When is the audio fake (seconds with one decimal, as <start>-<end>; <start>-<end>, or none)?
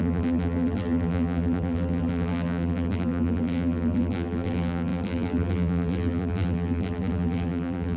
0.0-8.0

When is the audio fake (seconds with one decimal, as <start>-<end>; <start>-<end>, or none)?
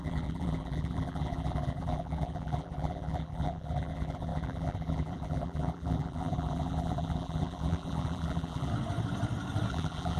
0.0-8.7; 9.7-10.2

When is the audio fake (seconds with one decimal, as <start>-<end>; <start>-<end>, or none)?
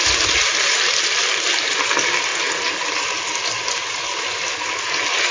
none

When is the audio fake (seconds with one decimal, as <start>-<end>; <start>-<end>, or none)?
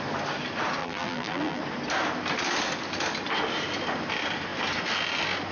0.8-1.6